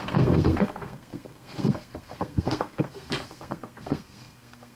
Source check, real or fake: fake